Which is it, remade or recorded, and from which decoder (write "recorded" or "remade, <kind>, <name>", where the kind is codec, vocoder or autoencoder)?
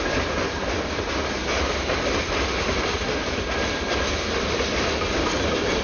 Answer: recorded